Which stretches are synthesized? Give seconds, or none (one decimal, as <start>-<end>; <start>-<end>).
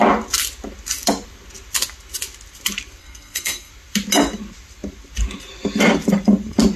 3.0-3.7